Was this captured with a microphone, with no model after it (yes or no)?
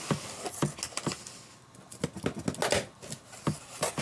yes